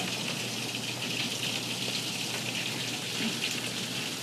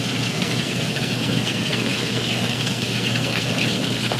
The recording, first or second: first